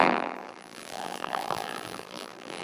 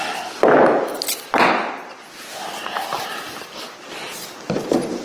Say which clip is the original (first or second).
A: second